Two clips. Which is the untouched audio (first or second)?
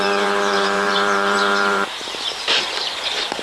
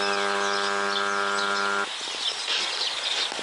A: second